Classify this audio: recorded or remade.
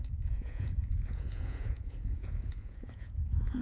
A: remade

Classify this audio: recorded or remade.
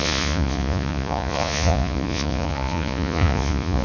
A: remade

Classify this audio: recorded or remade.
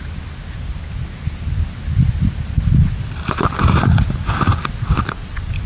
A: recorded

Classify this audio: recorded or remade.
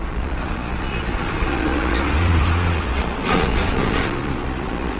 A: remade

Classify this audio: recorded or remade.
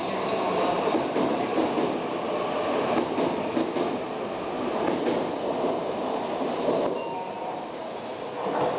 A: recorded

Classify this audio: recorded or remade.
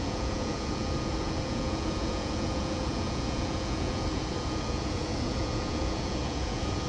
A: remade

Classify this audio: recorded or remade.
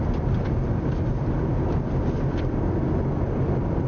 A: recorded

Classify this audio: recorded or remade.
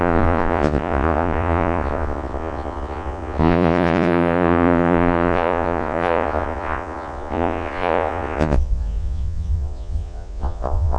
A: remade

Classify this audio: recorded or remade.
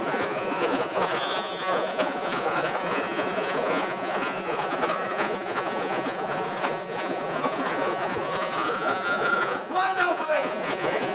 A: remade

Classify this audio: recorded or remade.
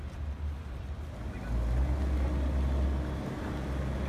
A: recorded